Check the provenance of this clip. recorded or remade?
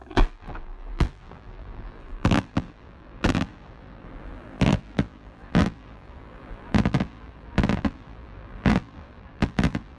remade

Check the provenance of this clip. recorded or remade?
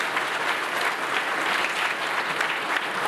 recorded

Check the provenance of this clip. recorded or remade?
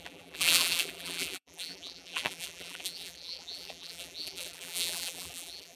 remade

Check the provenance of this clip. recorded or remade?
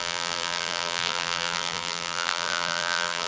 remade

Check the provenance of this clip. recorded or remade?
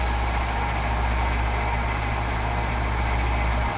recorded